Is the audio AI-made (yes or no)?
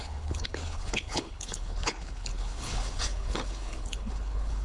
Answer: yes